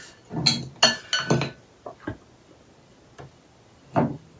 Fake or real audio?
real